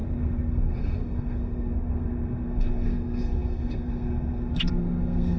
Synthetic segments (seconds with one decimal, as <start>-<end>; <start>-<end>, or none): 0.0-5.4